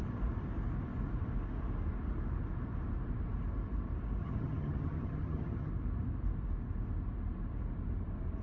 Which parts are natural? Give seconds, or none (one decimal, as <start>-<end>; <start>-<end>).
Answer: 0.0-4.2; 5.7-8.4

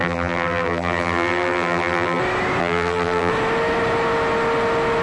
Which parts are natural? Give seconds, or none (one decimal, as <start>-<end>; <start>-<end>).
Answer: 2.2-2.6; 3.3-5.0

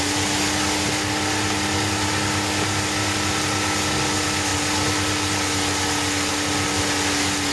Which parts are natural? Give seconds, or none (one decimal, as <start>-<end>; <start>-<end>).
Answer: 0.0-7.5

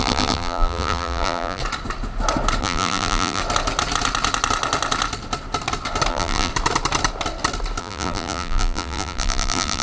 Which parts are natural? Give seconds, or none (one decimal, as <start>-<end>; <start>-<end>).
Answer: 1.6-2.6; 3.4-6.1; 6.5-7.8